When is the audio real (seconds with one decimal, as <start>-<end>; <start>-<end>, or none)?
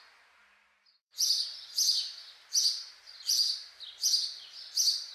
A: 3.4-4.3